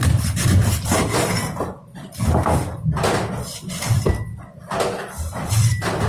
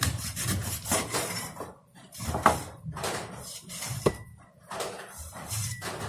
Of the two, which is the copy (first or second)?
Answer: second